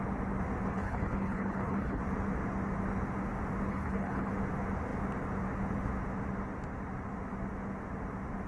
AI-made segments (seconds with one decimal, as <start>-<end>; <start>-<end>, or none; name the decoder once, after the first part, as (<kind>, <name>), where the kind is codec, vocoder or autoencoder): 0.7-2.0 (codec, HILCodec); 3.7-4.3